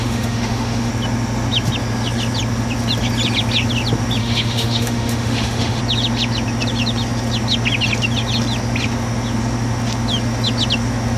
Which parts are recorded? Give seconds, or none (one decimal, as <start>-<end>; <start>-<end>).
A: 0.9-4.2; 5.8-11.2